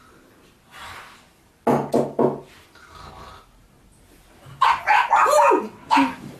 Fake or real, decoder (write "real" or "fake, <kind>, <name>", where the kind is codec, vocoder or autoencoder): real